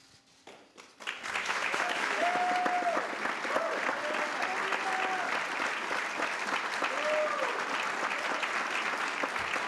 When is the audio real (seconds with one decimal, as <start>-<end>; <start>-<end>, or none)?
0.0-1.4; 2.5-9.7